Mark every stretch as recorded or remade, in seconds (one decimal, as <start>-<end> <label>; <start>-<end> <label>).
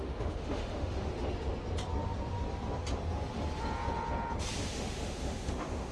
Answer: 0.0-1.1 remade; 1.1-4.6 recorded; 4.6-5.9 remade